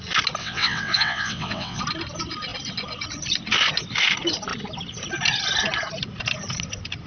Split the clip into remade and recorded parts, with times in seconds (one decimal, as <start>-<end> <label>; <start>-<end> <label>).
0.0-0.4 recorded; 0.4-1.8 remade; 1.8-7.1 recorded